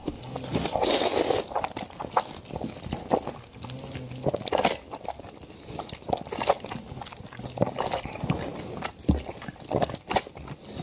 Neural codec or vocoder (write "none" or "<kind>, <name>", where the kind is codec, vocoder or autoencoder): none